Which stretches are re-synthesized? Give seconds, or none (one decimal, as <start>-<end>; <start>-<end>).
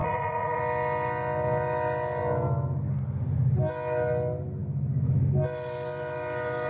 0.0-0.6